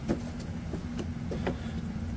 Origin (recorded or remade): recorded